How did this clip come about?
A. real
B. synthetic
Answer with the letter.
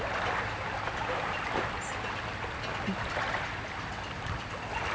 A